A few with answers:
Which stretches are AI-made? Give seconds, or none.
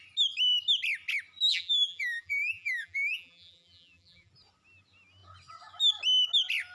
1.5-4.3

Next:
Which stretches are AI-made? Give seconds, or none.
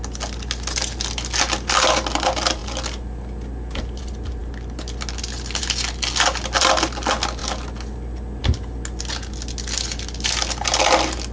none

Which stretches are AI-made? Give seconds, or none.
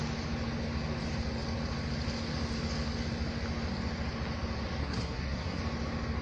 4.8-5.6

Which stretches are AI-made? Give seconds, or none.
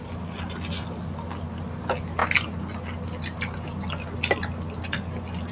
none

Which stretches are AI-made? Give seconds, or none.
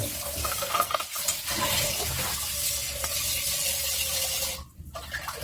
0.4-1.0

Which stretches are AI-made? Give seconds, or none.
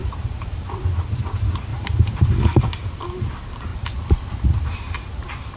0.0-1.0; 1.7-2.3; 3.7-5.6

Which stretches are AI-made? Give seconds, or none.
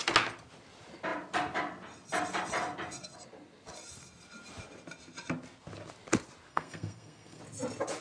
6.5-7.4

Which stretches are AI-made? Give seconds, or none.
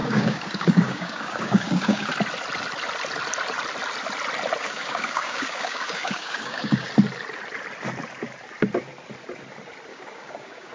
0.0-2.1; 4.6-6.9; 9.9-10.7